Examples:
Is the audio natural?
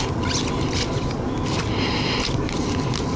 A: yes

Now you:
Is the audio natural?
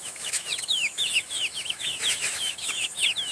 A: no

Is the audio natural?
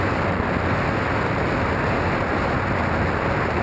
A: yes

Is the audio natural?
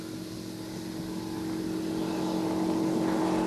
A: yes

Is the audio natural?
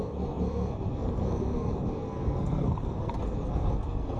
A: no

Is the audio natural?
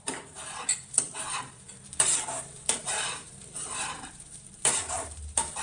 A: no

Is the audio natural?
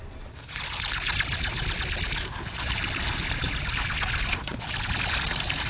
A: yes